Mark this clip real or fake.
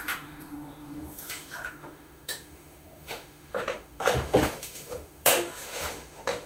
fake